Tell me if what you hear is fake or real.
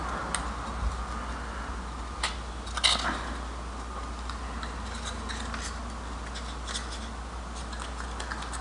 real